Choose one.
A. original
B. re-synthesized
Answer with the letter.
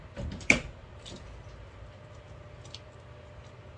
A